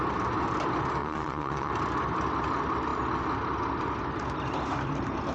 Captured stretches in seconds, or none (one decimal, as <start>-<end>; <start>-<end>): 0.0-1.0; 1.7-5.3